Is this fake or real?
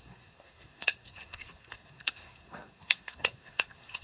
fake